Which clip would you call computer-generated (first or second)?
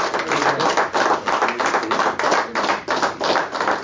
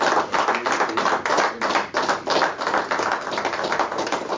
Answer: first